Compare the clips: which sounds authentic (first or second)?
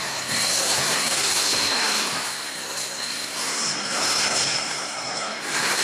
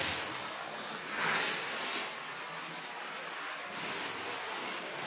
second